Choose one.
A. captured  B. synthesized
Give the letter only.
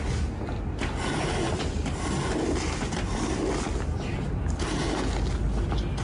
A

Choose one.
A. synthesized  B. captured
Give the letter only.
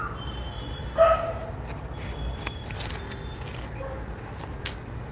B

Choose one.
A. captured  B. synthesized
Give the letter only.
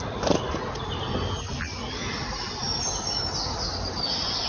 A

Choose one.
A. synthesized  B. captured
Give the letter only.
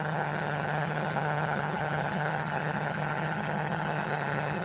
A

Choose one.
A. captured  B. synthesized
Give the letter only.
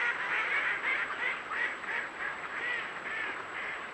B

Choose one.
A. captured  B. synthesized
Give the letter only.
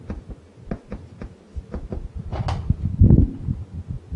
A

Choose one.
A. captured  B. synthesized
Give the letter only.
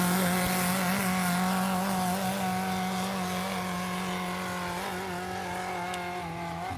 A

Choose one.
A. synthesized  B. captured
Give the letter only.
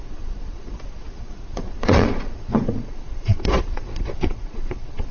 A